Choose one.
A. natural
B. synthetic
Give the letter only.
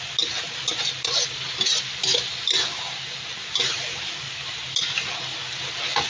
A